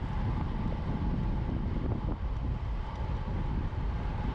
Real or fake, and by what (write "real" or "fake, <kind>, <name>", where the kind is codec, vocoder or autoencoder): real